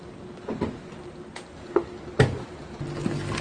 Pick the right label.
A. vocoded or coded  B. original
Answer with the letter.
B